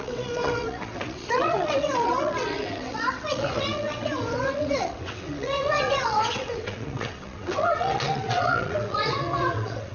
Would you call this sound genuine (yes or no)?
no